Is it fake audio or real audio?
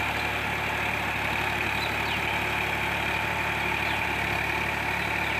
real